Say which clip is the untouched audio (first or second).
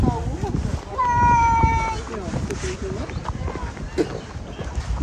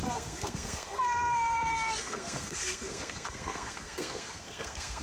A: first